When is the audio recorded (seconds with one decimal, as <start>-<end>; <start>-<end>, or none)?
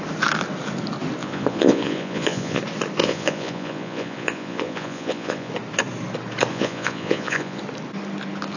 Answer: 0.0-1.2; 2.6-3.0; 5.5-6.5; 7.6-8.6